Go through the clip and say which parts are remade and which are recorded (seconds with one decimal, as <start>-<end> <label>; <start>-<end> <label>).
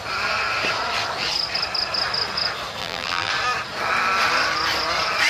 0.0-2.8 recorded; 2.8-3.3 remade; 3.3-5.3 recorded